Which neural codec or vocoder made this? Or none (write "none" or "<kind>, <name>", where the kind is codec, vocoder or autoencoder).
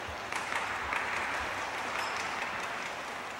none